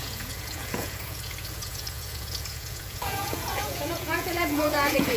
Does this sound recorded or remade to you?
remade